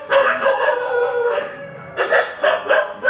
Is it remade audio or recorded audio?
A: remade